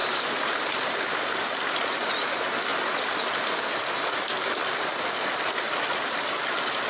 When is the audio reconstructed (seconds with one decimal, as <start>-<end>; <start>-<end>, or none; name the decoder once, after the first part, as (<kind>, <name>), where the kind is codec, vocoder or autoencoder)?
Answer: 0.0-1.0 (vocoder, BigVGAN v2)